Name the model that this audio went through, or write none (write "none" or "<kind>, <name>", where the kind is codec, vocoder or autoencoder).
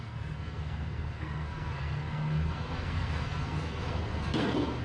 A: codec, SNAC